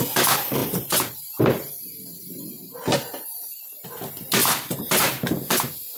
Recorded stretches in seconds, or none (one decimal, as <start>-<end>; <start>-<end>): 0.0-0.6; 2.5-4.4; 5.0-6.0